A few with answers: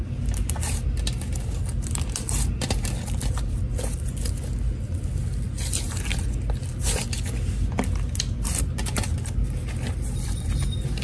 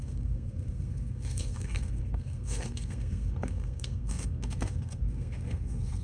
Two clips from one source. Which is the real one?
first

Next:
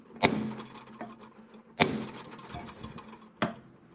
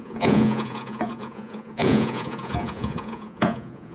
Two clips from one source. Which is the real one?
first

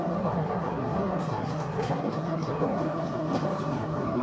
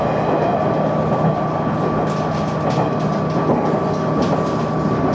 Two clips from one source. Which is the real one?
second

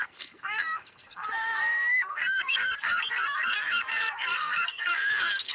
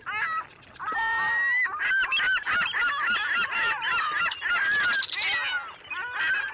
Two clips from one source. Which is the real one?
second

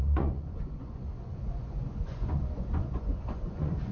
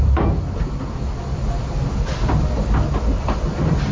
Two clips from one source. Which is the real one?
second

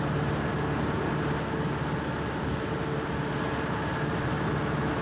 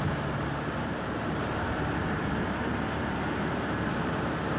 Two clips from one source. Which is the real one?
first